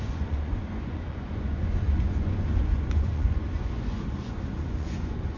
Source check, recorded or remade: remade